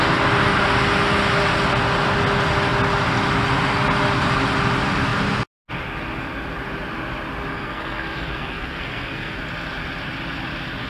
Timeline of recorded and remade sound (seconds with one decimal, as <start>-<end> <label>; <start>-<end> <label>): 0.0-7.5 recorded; 7.5-9.4 remade; 9.4-10.9 recorded